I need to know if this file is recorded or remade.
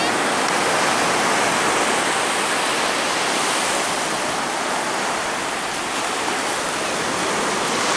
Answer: recorded